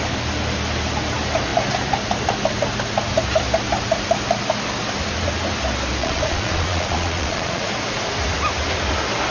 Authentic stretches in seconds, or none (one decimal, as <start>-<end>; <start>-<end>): 0.0-6.0; 7.7-9.3